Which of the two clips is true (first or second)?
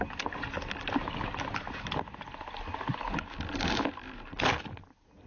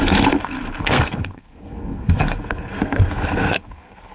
first